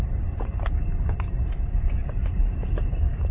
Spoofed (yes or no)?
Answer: yes